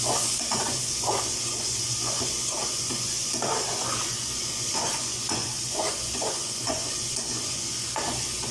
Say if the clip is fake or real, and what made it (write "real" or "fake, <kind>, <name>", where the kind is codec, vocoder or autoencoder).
fake, vocoder, Vocos